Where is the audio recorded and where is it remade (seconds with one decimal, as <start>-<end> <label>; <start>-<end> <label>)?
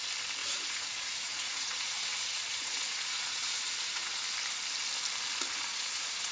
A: 0.0-0.4 recorded; 0.4-4.2 remade; 4.2-5.7 recorded; 5.7-6.3 remade